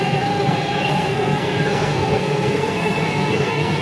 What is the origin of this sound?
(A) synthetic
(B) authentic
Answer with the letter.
A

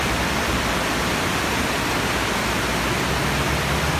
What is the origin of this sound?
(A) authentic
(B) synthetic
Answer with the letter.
A